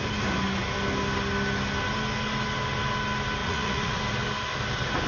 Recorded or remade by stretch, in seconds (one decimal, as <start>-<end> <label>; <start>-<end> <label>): 0.0-3.4 recorded; 3.4-4.0 remade; 4.0-5.1 recorded